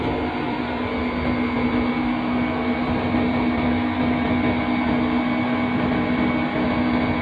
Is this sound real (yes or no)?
yes